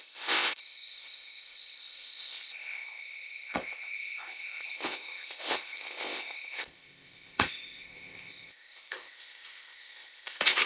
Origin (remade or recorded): remade